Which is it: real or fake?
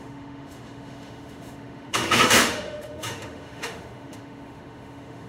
fake